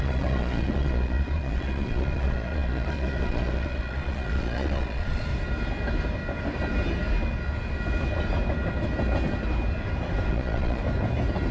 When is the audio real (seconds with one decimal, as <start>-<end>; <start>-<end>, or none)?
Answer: 5.3-10.3; 10.8-11.5